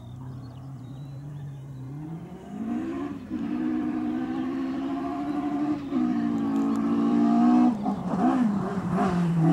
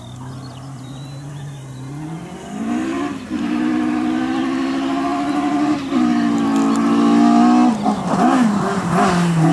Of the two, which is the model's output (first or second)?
first